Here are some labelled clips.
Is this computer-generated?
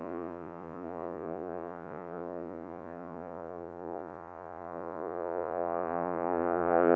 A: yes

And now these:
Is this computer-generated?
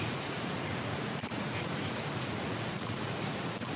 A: yes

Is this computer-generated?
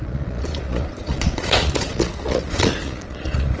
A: yes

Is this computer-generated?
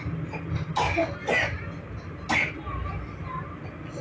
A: no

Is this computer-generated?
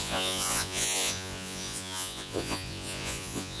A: yes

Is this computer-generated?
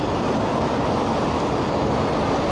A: no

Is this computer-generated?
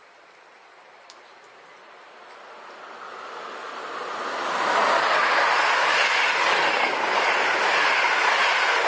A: no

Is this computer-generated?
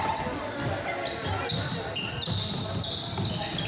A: no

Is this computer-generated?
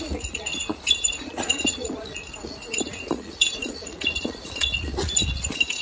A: yes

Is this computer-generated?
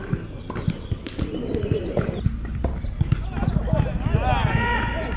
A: no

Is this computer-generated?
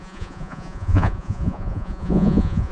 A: yes